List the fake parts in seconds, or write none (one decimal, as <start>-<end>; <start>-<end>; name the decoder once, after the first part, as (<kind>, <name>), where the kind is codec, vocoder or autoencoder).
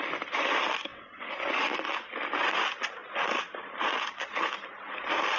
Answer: none